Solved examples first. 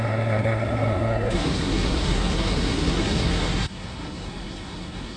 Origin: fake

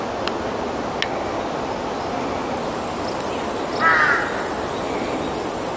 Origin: real